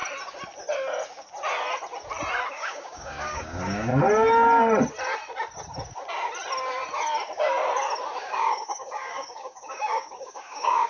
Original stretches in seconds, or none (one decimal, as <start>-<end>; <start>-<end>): 0.0-2.5; 3.9-8.2